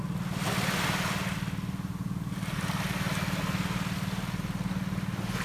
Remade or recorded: recorded